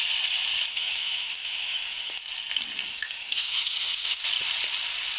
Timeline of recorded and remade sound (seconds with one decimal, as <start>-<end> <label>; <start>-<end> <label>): 0.0-0.7 recorded; 0.7-2.2 remade; 2.2-2.9 recorded; 2.9-4.2 remade; 4.2-5.2 recorded